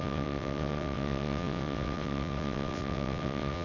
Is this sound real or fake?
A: fake